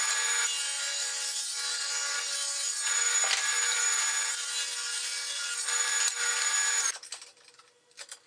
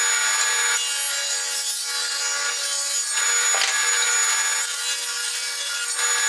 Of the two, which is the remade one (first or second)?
first